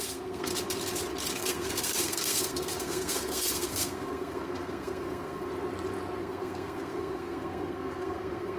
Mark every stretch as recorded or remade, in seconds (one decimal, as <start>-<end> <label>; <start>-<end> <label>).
0.0-0.5 remade; 0.5-1.3 recorded; 1.3-5.5 remade; 5.5-6.2 recorded; 6.2-8.6 remade